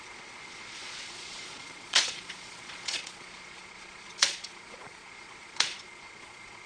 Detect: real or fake fake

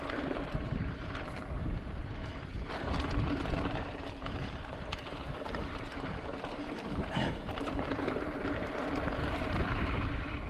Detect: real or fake fake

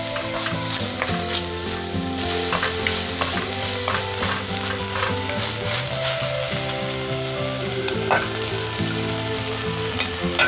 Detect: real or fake real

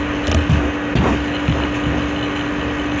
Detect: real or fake real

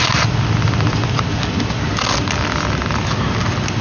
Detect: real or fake real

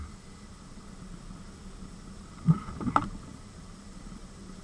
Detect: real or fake fake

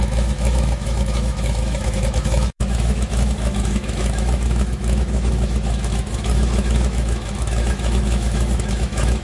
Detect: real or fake fake